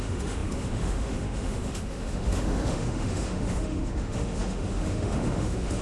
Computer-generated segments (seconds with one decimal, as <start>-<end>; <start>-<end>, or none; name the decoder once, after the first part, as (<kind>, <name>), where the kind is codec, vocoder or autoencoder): 0.0-5.8 (autoencoder, DAC-VAE)